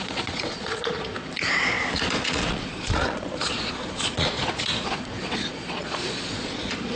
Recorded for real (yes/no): no